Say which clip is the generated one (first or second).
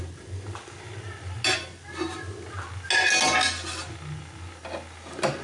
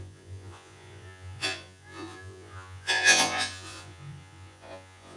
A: second